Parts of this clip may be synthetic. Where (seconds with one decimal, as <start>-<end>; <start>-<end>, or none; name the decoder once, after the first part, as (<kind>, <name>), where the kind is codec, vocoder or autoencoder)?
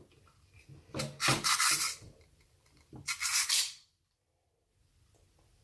1.3-4.7 (vocoder, BigVGAN v2)